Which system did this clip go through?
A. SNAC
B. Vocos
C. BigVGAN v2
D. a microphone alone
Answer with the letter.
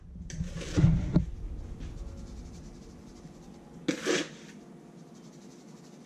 D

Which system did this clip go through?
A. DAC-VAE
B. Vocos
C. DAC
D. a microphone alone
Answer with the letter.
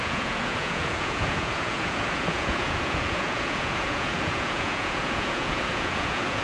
B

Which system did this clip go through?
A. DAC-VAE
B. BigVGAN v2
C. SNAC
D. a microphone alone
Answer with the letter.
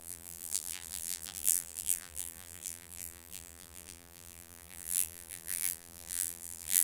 B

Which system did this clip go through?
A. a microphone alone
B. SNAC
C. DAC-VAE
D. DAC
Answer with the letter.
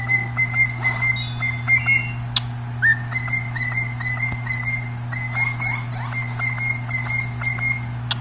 A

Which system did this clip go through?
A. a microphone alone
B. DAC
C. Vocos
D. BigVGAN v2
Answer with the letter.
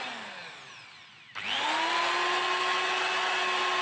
A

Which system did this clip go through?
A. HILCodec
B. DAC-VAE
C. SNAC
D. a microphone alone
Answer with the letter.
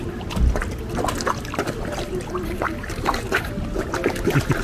D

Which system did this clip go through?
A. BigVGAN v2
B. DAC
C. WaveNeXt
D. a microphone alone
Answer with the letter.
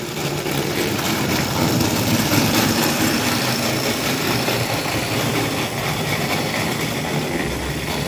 A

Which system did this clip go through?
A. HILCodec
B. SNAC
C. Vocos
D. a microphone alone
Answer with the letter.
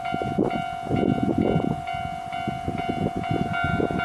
D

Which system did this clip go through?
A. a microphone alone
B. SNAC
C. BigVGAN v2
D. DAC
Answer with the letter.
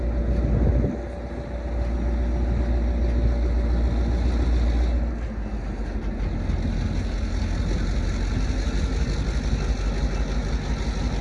A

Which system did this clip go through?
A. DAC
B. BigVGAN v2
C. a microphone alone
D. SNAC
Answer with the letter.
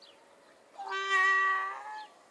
C